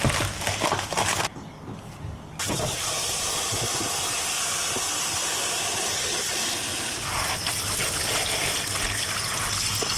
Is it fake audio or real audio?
real